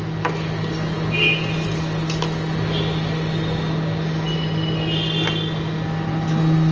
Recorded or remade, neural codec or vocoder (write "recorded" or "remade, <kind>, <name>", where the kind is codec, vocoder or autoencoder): recorded